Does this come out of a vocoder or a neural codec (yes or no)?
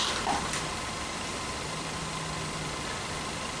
no